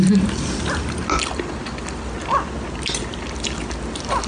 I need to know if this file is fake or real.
real